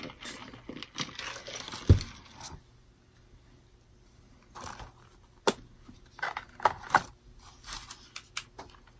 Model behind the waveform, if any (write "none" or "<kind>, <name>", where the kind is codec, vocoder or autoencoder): none